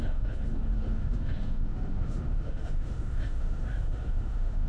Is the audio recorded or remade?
remade